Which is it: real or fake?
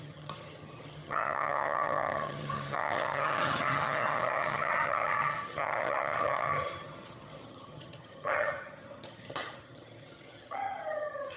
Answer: fake